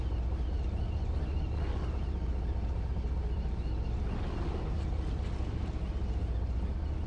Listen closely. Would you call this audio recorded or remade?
recorded